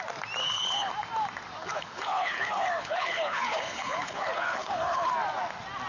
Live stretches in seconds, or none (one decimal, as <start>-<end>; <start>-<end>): 0.0-0.4; 0.9-1.6; 5.1-5.9